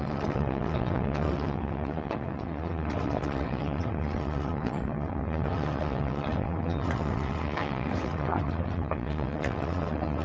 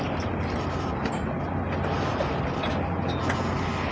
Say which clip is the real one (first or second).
second